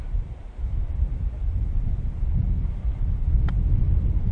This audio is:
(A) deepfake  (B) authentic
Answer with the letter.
B